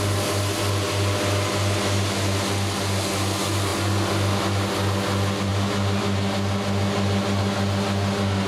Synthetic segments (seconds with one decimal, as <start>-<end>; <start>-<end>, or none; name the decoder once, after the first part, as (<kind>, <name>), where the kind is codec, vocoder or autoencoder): none